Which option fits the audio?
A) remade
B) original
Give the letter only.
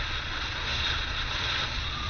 A